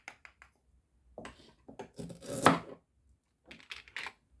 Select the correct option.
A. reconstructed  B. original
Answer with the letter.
B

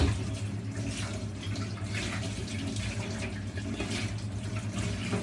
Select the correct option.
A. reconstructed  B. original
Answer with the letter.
B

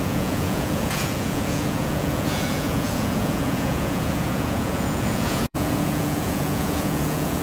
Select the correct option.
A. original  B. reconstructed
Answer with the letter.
B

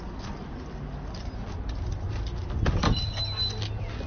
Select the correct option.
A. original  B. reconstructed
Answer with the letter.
A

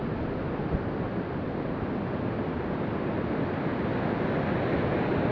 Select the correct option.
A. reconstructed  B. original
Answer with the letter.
B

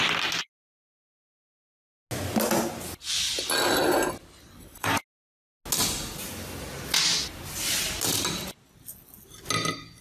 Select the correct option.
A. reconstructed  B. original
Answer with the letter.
B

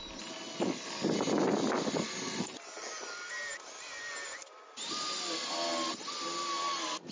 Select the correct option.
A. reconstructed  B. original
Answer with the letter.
B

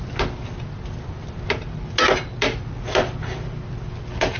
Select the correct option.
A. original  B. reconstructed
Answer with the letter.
A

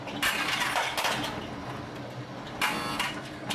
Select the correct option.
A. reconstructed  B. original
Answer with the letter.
B